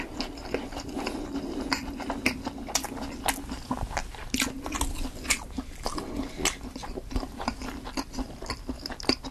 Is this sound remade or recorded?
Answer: recorded